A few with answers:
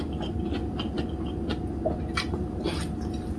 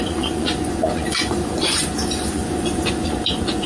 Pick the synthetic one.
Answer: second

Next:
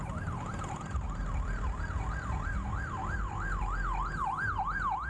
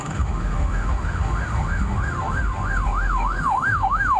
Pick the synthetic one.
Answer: second